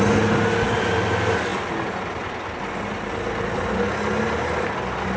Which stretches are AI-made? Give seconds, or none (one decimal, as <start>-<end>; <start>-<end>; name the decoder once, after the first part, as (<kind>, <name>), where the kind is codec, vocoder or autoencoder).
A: none